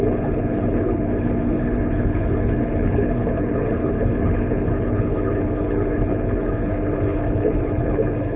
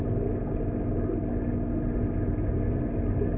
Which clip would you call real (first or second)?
second